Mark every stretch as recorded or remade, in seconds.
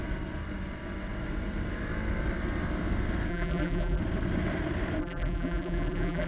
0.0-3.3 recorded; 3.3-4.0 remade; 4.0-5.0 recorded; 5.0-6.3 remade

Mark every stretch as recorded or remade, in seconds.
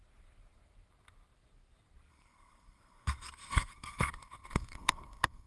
0.0-2.1 recorded; 2.1-5.5 remade